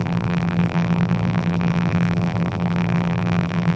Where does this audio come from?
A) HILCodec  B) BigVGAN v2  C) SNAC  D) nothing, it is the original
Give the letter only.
B